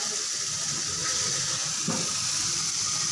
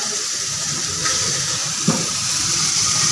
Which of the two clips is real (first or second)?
first